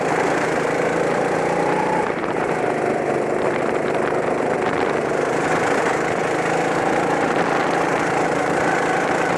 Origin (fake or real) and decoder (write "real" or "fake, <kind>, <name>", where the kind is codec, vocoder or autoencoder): fake, vocoder, BigVGAN v2